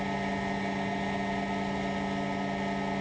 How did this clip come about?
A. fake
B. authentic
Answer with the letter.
B